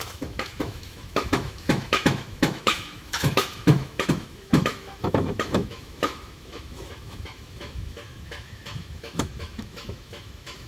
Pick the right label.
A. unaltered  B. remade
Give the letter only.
B